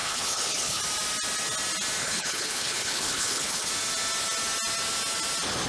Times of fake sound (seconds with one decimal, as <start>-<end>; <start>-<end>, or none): 0.0-0.8; 2.0-3.7